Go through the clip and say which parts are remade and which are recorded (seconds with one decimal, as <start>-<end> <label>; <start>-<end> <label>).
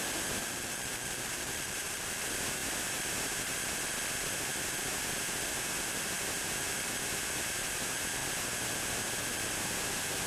0.0-0.4 recorded; 0.4-2.2 remade; 2.2-10.3 recorded